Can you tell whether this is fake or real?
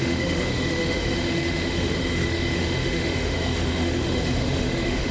fake